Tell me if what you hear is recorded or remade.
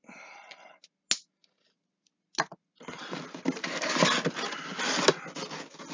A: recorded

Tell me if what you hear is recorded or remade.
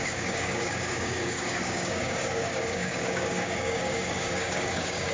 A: remade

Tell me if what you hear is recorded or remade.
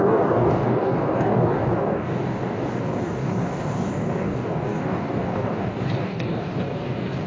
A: remade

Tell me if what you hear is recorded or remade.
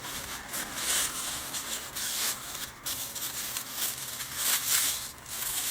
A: remade